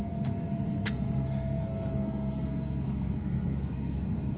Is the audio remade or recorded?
remade